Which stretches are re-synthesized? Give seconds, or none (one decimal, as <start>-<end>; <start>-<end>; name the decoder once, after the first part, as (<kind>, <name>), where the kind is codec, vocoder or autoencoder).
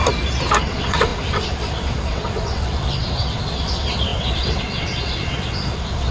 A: 0.6-6.1 (vocoder, WaveNeXt)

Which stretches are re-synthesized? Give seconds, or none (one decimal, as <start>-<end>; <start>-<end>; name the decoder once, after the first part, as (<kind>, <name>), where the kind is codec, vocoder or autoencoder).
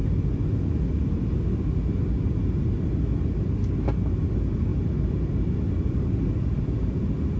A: none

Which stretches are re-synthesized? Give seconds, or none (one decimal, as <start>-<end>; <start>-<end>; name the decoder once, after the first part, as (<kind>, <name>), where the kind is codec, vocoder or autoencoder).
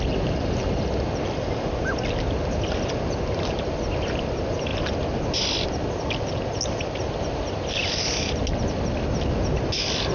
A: none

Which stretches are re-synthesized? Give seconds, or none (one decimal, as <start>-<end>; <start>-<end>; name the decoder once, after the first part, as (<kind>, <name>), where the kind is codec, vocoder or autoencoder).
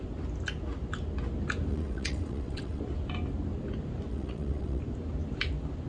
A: 1.7-2.8 (vocoder, WaveNeXt); 4.1-4.8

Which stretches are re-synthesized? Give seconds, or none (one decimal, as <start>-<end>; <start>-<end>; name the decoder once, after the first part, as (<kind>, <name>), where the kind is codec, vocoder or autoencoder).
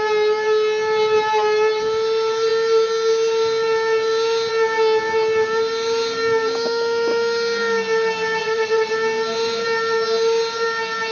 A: 8.4-8.9 (vocoder, WaveNeXt)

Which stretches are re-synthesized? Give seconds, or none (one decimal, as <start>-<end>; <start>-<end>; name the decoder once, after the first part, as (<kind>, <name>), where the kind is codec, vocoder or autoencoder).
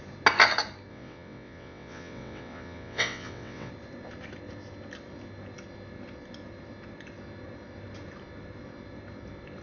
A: 0.9-3.7 (vocoder, WaveNeXt)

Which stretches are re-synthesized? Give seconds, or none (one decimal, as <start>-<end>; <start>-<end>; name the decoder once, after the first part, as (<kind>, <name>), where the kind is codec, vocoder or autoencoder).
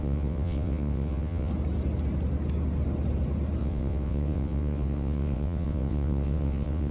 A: 0.0-1.5 (vocoder, WaveNeXt); 3.6-6.9